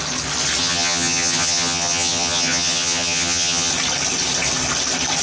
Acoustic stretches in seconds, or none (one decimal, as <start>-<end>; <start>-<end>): 0.0-0.6; 3.7-5.2